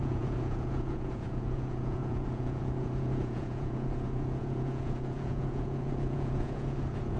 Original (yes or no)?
no